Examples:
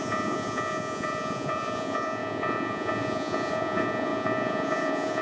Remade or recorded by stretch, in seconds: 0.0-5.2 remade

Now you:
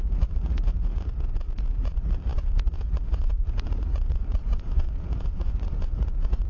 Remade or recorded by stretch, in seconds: 0.0-1.1 remade; 1.1-1.7 recorded; 1.7-6.5 remade